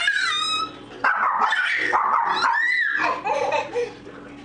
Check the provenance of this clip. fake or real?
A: real